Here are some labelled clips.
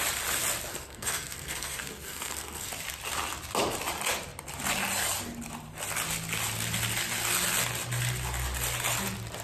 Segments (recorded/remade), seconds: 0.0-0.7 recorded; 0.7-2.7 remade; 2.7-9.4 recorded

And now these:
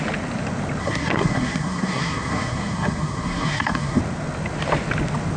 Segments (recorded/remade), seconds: 0.0-0.8 recorded; 0.8-4.0 remade; 4.0-5.4 recorded

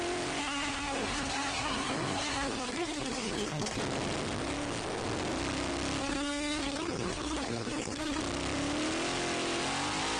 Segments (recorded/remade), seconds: 0.0-0.4 recorded; 0.4-3.8 remade; 3.8-6.0 recorded; 6.0-8.2 remade; 8.2-10.2 recorded

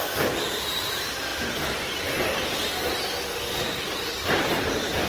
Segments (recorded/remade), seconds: 0.0-5.1 recorded

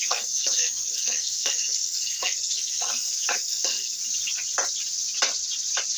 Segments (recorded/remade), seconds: 0.0-4.0 remade; 4.0-6.0 recorded

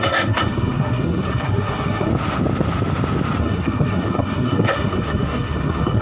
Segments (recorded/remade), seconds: 0.0-2.1 remade; 2.1-3.4 recorded; 3.4-6.0 remade